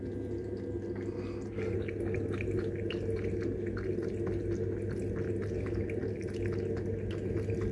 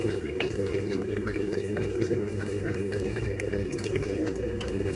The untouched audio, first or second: first